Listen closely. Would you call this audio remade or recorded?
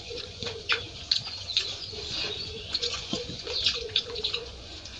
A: remade